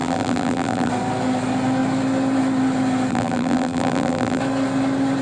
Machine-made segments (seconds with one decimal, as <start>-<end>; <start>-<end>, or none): 0.0-0.9; 3.1-4.4